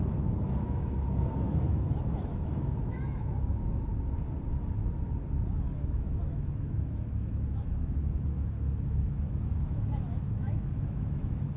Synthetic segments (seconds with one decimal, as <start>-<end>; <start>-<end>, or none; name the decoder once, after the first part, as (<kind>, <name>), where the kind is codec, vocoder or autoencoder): 0.0-3.9 (autoencoder, DAC-VAE); 5.7-11.6